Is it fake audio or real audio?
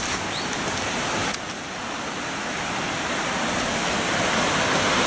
real